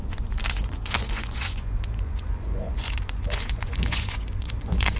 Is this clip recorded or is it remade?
remade